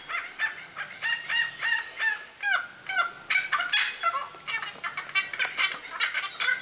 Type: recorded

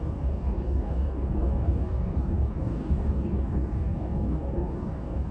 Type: remade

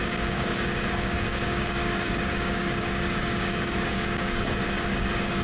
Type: remade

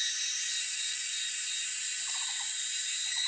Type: recorded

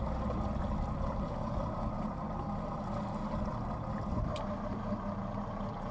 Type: recorded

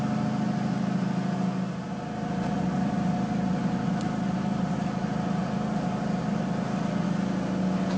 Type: recorded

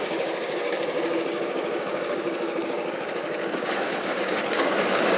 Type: remade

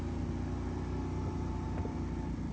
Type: recorded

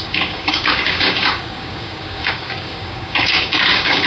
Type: remade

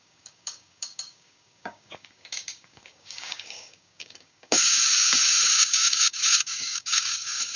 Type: remade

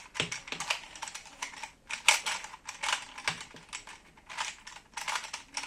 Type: recorded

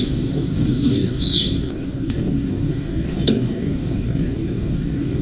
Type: remade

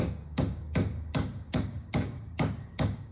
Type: remade